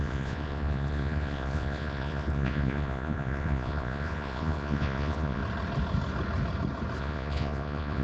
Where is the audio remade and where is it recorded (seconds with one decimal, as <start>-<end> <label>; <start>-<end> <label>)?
0.0-5.4 remade; 5.4-7.0 recorded; 7.0-8.0 remade